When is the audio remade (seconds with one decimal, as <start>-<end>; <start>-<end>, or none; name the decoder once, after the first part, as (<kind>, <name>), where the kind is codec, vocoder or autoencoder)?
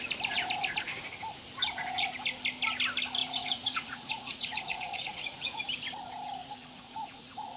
3.2-5.6 (vocoder, Vocos); 6.4-7.6